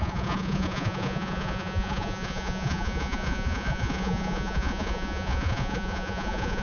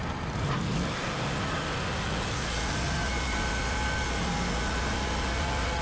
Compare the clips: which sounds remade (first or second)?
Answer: first